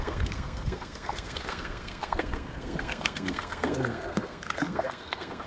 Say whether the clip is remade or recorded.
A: remade